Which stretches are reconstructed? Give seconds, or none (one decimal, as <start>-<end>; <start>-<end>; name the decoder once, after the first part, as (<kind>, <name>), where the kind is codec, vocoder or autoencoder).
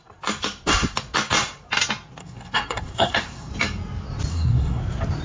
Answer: 2.2-3.5 (codec, SNAC); 4.3-4.8